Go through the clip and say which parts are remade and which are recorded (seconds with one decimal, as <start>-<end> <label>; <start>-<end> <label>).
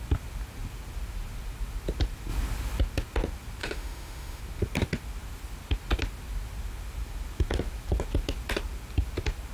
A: 0.0-3.6 recorded; 3.6-4.4 remade; 4.4-9.5 recorded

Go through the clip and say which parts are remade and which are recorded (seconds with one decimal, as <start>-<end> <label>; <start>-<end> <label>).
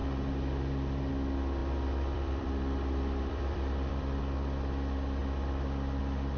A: 0.0-1.6 recorded; 1.6-4.2 remade; 4.2-5.2 recorded; 5.2-6.0 remade; 6.0-6.4 recorded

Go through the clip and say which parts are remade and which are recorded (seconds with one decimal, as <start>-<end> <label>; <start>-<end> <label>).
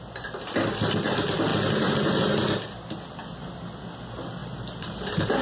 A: 0.0-4.4 recorded; 4.4-5.4 remade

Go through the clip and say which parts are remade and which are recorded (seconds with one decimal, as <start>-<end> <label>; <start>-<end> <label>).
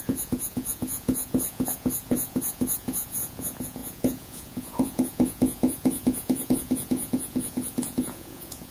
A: 0.0-8.7 remade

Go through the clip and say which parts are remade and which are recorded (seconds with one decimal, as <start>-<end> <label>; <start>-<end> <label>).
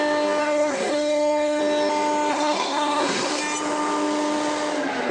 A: 0.0-0.4 recorded; 0.4-1.6 remade; 1.6-2.3 recorded; 2.3-3.4 remade; 3.4-5.1 recorded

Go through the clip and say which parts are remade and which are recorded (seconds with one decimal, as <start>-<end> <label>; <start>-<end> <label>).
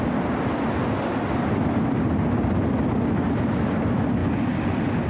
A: 0.0-5.1 recorded